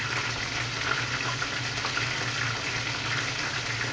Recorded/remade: recorded